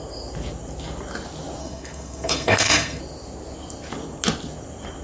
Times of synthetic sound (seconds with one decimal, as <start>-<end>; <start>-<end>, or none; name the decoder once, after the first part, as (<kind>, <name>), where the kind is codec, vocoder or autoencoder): 1.6-3.0 (codec, SNAC)